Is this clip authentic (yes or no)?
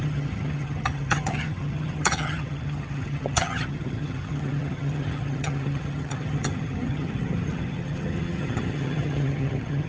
no